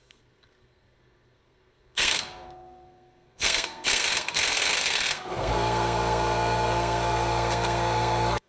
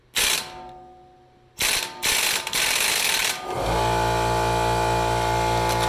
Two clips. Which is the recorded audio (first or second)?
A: second